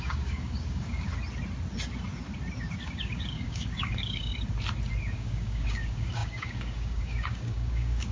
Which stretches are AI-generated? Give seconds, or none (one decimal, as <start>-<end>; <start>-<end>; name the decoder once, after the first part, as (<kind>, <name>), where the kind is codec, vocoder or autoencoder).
0.0-1.1 (codec, DAC); 2.8-4.3; 5.0-8.1